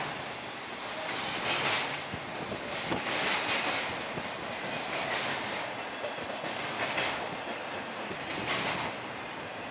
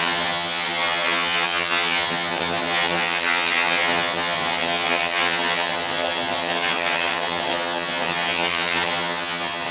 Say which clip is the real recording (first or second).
first